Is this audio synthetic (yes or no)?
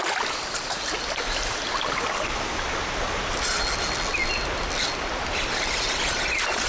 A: no